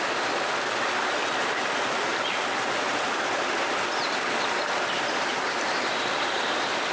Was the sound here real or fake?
real